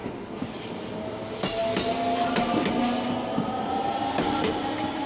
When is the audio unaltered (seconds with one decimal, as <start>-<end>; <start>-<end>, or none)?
0.0-5.1